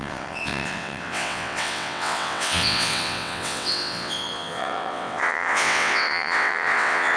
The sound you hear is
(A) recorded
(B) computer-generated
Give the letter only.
B